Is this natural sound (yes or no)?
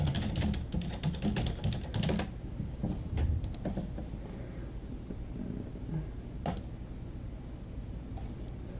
yes